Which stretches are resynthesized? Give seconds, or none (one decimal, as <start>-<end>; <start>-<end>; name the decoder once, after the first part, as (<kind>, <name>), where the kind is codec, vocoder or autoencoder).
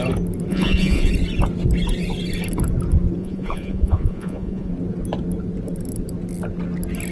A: 0.5-1.1 (vocoder, Vocos); 3.2-4.7